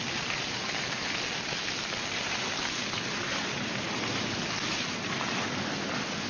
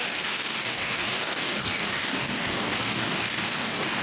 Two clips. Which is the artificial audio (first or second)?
second